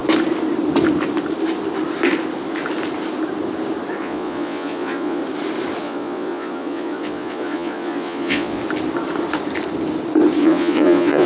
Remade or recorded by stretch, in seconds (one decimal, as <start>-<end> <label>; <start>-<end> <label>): 0.0-4.0 recorded; 4.0-5.2 remade; 5.2-5.8 recorded; 5.8-8.6 remade; 8.6-10.4 recorded; 10.4-11.3 remade